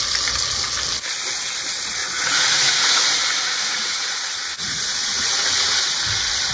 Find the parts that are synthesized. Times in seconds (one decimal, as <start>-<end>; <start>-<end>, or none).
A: 2.0-5.9